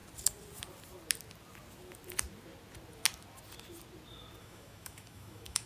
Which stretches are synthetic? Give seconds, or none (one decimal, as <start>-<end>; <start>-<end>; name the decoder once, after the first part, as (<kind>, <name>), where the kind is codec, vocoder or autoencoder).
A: 4.4-5.7 (autoencoder, DAC-VAE)